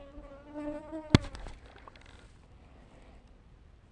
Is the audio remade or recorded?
recorded